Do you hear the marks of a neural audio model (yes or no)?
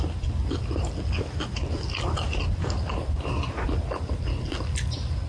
no